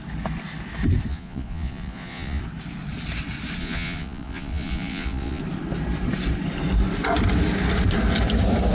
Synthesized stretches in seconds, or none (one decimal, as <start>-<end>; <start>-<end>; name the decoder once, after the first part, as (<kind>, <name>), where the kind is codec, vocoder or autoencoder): 1.1-2.4 (vocoder, Vocos); 3.6-5.4